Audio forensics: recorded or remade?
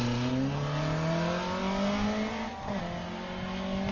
recorded